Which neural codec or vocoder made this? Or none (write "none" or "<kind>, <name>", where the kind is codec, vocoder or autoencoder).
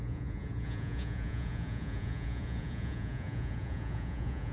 vocoder, Vocos